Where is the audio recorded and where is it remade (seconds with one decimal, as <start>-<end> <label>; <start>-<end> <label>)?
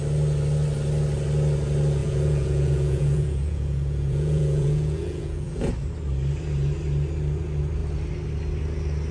0.0-2.0 recorded; 2.0-5.7 remade; 5.7-9.1 recorded